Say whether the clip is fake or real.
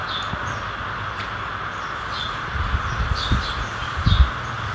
real